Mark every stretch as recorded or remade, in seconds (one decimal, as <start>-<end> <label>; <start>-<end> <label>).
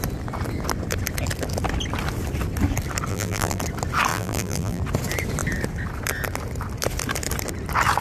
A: 0.0-3.1 recorded; 3.1-3.6 remade; 3.6-4.1 recorded; 4.1-4.8 remade; 4.8-8.0 recorded